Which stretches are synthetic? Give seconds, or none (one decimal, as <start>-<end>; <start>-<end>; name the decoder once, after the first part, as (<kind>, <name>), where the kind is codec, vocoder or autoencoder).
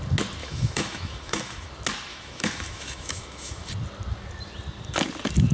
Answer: 0.4-1.7 (autoencoder, DAC-VAE); 2.1-3.7